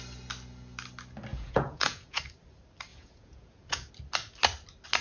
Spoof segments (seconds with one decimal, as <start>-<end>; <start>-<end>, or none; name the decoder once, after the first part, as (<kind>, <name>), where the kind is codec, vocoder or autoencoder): 1.3-2.2 (vocoder, Vocos); 2.9-3.9